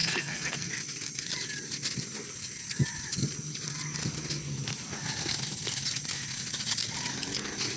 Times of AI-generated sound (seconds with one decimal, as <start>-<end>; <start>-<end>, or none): 0.0-0.7